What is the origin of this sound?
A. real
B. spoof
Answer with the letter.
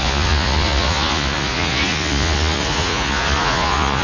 B